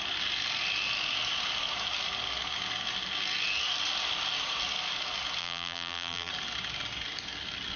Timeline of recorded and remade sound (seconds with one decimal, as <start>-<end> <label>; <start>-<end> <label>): 0.0-5.4 recorded; 5.4-6.3 remade; 6.3-7.8 recorded